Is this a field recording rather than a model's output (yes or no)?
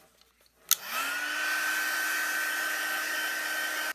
yes